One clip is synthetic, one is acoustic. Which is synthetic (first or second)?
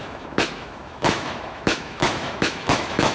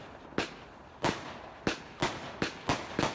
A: first